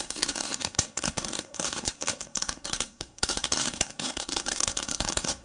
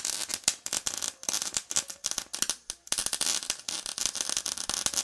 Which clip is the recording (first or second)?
second